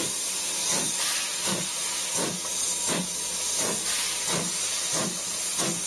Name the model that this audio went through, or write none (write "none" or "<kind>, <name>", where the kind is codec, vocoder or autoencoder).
none